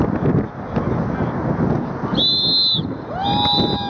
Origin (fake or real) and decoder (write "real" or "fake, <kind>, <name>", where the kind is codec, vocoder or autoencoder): real